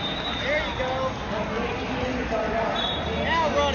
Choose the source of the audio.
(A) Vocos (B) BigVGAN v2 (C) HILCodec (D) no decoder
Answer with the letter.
D